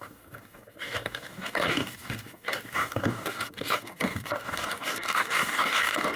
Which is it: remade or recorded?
remade